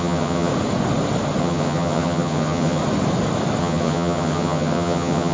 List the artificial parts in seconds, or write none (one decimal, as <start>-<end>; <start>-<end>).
0.0-0.5; 1.4-2.8; 3.6-5.3